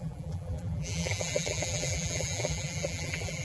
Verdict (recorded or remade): remade